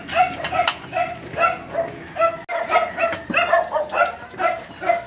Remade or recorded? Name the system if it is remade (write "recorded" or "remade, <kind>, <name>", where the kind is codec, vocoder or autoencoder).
recorded